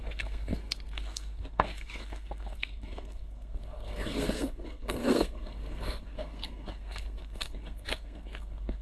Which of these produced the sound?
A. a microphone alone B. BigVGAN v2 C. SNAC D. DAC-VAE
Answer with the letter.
C